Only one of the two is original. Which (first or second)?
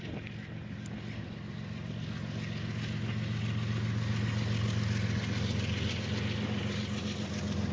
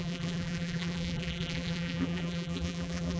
first